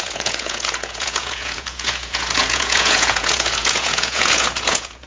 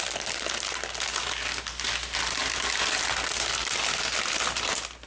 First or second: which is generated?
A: first